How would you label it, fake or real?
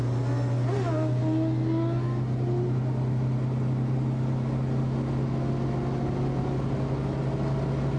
real